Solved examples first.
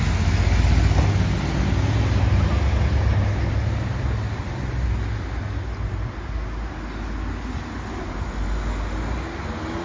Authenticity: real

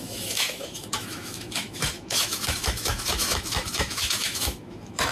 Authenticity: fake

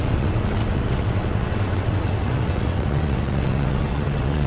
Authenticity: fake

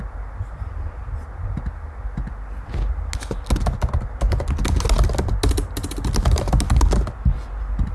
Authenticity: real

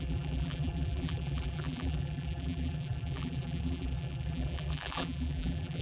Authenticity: fake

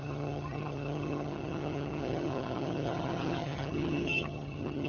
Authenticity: fake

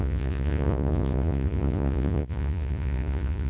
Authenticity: fake